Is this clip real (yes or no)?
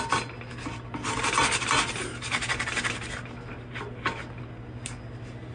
yes